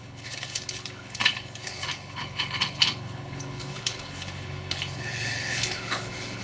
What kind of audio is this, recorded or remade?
remade